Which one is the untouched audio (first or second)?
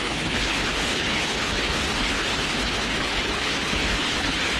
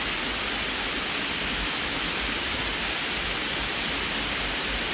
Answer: second